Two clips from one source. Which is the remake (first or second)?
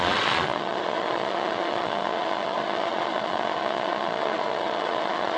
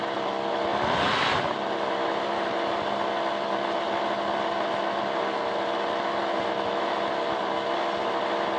first